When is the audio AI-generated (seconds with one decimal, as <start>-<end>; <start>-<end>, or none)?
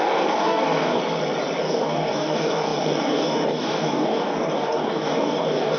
0.0-1.0; 1.6-5.8